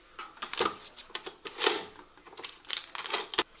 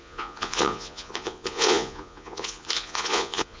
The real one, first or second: first